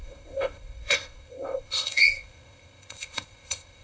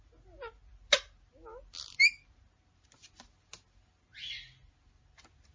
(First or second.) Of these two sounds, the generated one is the first